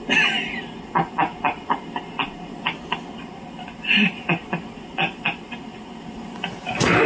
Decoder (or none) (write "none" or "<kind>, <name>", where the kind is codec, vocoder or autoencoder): none